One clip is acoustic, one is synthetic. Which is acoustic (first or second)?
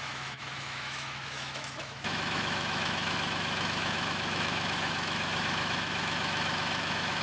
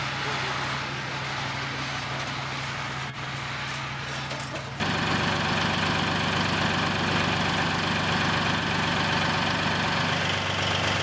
second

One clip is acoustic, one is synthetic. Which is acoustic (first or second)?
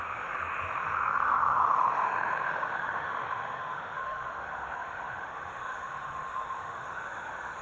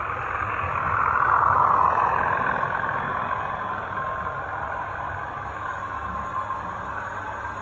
second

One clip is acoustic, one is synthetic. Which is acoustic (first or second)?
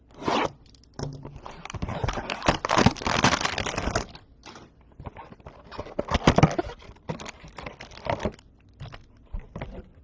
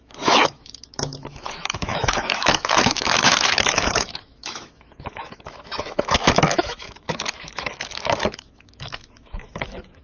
first